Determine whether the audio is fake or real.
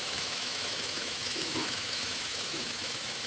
fake